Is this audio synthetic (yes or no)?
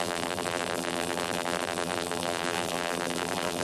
yes